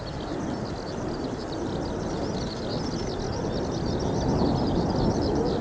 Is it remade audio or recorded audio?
recorded